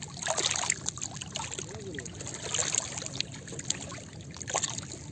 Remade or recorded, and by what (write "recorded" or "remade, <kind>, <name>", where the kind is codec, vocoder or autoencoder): recorded